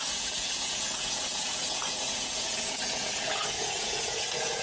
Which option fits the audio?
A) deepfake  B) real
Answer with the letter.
A